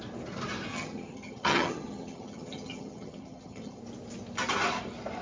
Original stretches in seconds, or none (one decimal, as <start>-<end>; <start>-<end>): 0.0-0.7; 3.8-5.2